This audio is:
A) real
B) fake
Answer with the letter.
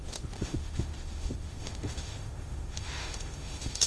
B